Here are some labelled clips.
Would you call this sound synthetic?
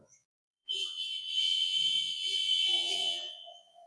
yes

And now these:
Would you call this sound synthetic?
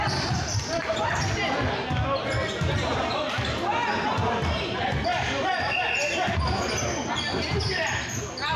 no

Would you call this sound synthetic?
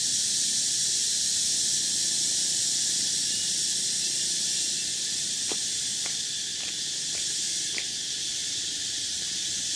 no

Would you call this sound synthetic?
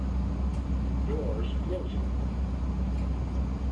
no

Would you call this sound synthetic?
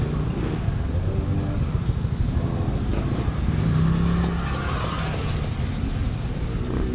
no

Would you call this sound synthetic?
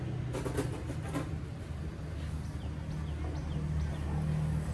no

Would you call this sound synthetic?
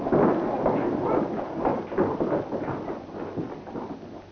no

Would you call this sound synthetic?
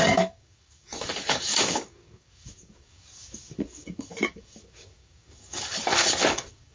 yes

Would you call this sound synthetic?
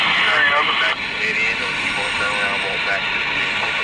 no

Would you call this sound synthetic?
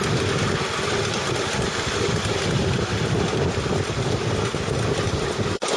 no